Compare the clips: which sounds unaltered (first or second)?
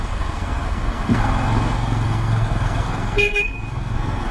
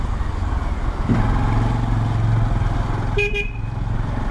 second